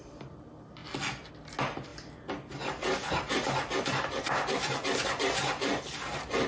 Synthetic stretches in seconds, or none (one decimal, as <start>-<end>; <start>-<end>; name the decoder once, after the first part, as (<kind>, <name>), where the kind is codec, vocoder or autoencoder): none